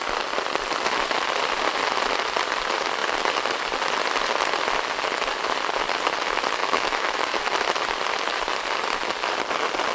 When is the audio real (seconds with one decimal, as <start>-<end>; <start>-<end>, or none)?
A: 0.0-6.6; 7.4-9.9

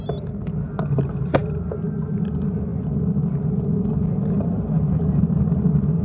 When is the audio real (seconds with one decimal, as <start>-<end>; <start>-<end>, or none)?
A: 0.0-6.0